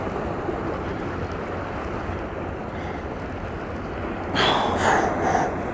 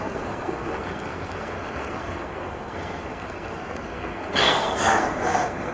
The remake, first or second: second